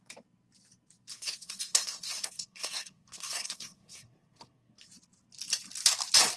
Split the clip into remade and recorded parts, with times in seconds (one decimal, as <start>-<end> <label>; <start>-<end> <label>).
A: 0.0-1.1 recorded; 1.1-4.9 remade; 4.9-6.4 recorded